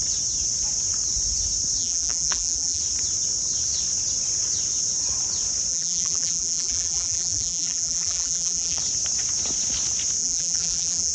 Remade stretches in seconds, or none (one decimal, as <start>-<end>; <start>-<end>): 1.8-2.8; 5.7-8.8; 10.2-11.1